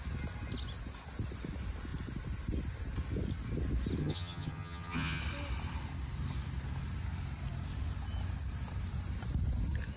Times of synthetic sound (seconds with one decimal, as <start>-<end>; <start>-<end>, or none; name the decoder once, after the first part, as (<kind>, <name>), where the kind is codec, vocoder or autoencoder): 4.0-5.2 (vocoder, HiFi-GAN)